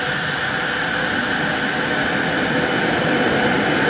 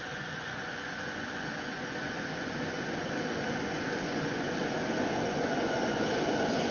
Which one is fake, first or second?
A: second